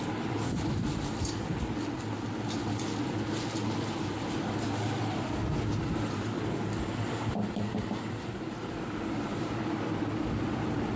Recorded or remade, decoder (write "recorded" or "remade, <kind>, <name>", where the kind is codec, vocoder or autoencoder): recorded